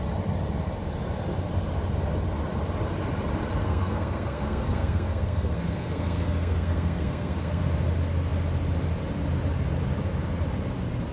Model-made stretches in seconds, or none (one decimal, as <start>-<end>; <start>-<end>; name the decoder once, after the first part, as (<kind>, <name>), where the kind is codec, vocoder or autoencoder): 3.6-7.6 (codec, SNAC)